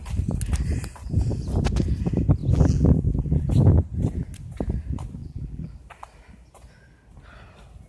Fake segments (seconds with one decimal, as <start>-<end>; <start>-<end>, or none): 2.4-3.5; 5.2-5.7